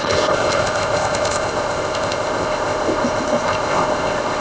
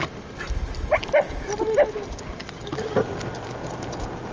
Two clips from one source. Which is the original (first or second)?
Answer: second